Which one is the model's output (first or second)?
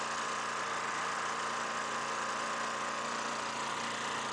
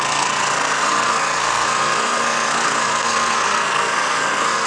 second